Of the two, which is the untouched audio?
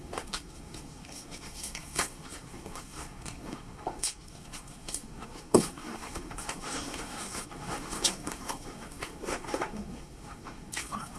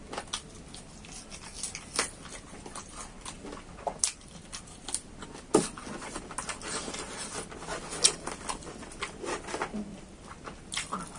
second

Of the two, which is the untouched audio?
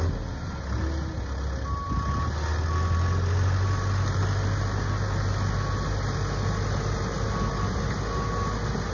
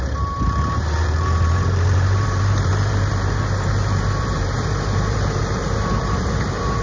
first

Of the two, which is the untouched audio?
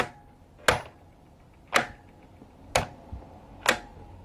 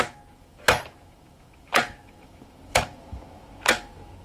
first